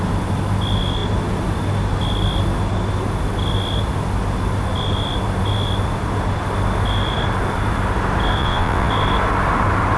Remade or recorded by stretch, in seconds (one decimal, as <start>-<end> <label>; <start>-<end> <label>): 0.0-8.4 recorded; 8.4-8.9 remade; 8.9-10.0 recorded